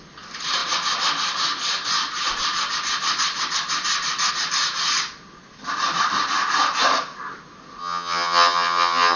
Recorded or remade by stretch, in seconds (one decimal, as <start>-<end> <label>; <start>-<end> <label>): 0.0-7.8 recorded; 7.8-9.2 remade